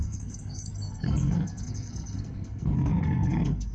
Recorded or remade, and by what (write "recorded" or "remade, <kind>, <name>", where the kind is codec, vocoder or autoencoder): remade, codec, SNAC